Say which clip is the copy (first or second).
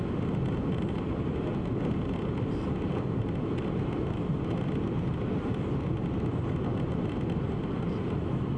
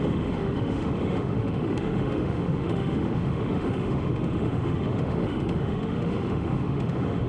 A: second